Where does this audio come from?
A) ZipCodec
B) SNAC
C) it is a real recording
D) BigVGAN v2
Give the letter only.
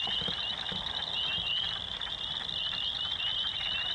C